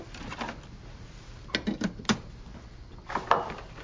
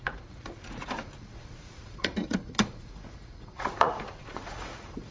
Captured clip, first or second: first